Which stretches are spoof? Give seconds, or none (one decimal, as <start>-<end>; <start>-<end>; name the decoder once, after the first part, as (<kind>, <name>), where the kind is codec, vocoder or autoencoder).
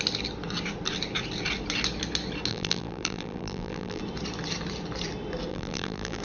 2.5-4.0 (vocoder, BigVGAN v2); 5.5-6.2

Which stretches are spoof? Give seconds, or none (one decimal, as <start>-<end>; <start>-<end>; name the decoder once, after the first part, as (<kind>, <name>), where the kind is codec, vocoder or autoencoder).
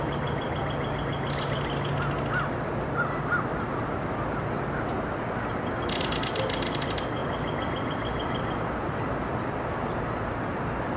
none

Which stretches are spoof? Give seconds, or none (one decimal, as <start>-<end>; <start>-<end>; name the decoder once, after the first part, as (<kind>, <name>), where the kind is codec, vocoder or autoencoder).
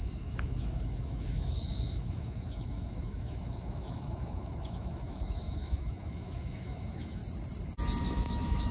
0.0-7.2 (autoencoder, DAC-VAE); 8.0-8.7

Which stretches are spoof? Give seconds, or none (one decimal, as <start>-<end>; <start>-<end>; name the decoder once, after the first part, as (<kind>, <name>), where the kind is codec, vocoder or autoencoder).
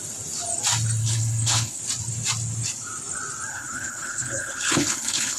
1.0-1.8 (codec, HILCodec); 3.5-5.4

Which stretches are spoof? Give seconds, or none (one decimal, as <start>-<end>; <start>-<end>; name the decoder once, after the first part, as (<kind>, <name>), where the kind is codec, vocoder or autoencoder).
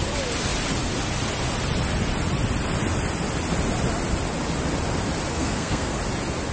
5.3-6.0 (codec, SNAC)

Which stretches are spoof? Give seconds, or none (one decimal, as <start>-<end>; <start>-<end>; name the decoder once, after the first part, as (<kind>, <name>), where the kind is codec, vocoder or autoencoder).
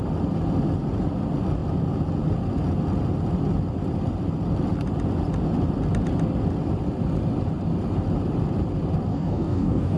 9.1-10.0 (codec, DAC)